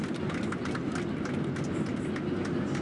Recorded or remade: recorded